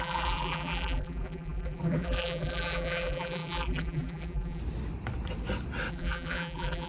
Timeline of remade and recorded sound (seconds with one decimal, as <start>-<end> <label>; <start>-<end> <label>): 0.0-4.6 remade; 4.6-5.9 recorded; 5.9-6.9 remade

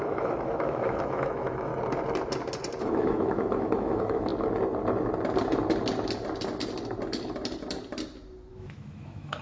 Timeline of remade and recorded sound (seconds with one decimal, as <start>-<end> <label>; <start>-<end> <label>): 0.0-1.7 remade; 1.7-2.8 recorded; 2.8-4.3 remade; 4.3-8.5 recorded; 8.5-9.4 remade